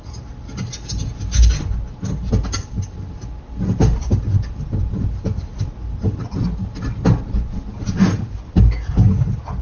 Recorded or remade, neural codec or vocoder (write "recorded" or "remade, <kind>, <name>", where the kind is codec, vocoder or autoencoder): recorded